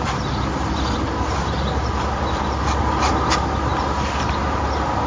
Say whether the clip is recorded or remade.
recorded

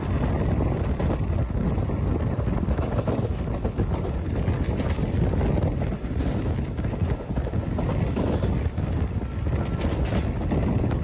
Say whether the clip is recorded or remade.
recorded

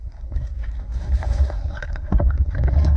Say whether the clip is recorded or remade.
remade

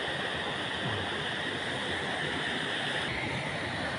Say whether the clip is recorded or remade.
recorded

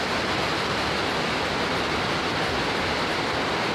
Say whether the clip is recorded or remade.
recorded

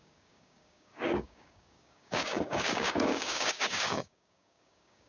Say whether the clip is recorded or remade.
remade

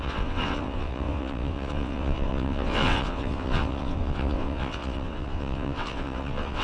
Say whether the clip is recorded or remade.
remade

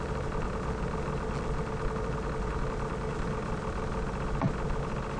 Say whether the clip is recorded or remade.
recorded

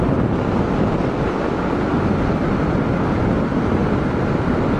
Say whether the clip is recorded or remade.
recorded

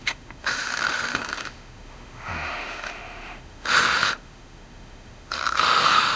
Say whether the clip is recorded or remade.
remade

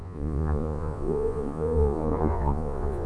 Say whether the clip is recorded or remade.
remade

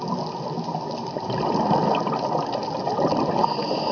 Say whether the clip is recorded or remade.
recorded